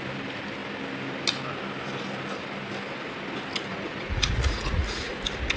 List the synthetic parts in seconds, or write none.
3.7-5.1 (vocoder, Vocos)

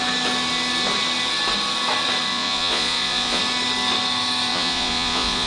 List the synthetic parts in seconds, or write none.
2.3-3.4 (vocoder, Vocos); 4.5-5.5

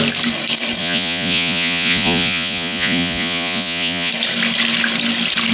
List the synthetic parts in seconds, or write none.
0.8-4.1 (vocoder, Vocos)

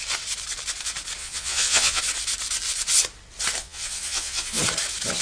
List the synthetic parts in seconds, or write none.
1.2-2.0 (vocoder, Vocos); 3.6-4.6